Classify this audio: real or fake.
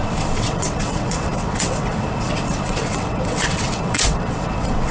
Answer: fake